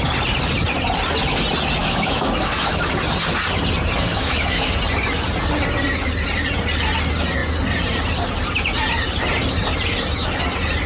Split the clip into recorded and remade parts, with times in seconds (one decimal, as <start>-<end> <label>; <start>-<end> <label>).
0.0-1.8 recorded; 1.8-2.9 remade; 2.9-4.1 recorded; 4.1-4.7 remade; 4.7-10.9 recorded